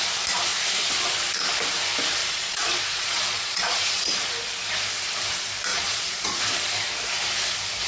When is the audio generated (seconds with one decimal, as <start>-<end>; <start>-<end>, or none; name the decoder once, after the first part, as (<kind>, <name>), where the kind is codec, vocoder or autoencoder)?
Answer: 2.2-4.1 (vocoder, Vocos); 5.7-6.4